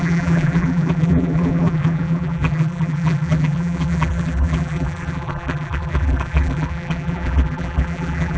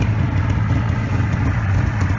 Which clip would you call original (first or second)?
second